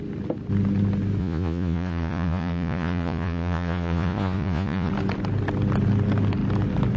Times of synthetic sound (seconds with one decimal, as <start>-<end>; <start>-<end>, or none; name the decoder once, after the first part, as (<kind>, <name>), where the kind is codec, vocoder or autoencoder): 1.2-4.9 (vocoder, Vocos)